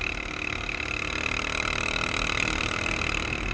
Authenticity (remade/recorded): recorded